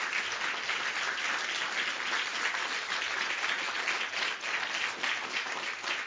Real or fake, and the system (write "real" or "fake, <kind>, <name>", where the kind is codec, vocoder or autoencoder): real